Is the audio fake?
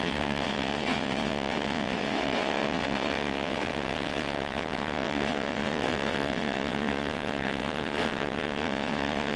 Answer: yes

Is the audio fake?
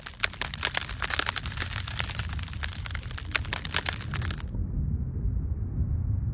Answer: no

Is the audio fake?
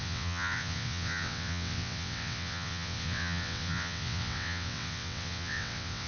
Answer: yes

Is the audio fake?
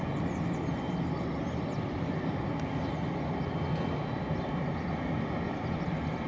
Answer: no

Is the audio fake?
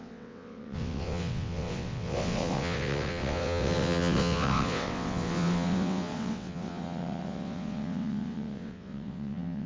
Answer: yes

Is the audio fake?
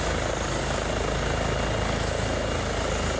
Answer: no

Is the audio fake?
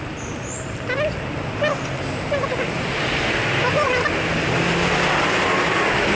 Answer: no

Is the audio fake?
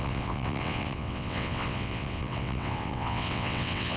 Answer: yes